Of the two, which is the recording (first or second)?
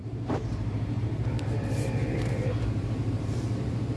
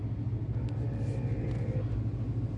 second